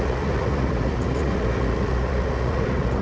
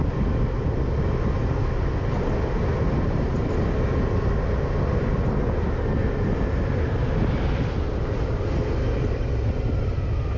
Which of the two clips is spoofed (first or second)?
first